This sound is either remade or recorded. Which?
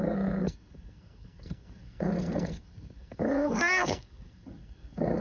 remade